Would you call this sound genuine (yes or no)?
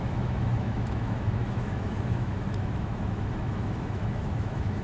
no